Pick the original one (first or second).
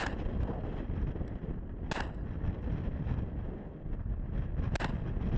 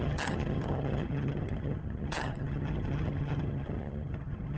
first